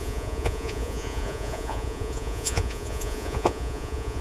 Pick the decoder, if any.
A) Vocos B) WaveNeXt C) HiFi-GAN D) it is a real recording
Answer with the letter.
A